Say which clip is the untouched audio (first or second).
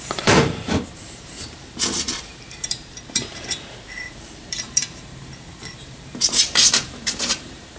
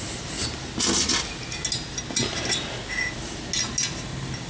second